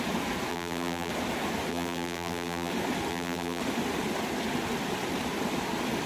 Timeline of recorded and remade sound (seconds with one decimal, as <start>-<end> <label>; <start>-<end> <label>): 0.0-0.5 recorded; 0.5-1.1 remade; 1.1-1.7 recorded; 1.7-2.7 remade; 2.7-3.1 recorded; 3.1-3.6 remade; 3.6-6.1 recorded